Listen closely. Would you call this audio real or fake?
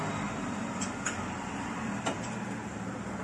real